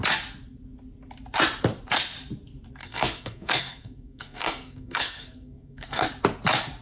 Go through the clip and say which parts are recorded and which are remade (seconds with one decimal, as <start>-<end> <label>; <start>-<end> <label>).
0.0-2.8 recorded; 2.8-6.1 remade; 6.1-6.8 recorded